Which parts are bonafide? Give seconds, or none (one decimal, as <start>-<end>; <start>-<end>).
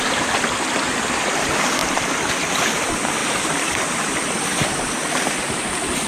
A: 0.0-1.8; 2.8-3.2; 5.6-6.1